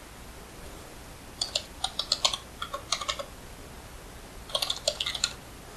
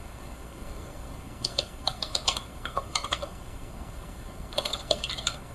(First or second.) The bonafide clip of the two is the first